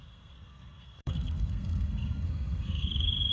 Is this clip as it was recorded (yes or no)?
no